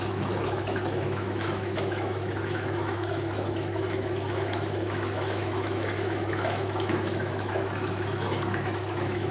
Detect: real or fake fake